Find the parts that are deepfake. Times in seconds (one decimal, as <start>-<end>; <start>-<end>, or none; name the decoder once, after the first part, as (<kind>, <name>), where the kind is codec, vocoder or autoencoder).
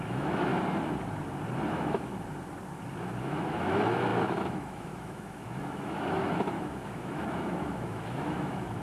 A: 0.0-0.5 (autoencoder, DAC-VAE); 1.7-2.1; 3.2-8.8